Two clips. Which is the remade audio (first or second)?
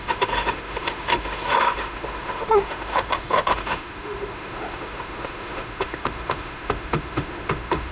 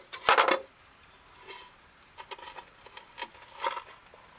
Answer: first